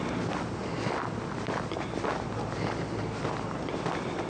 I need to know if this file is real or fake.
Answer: real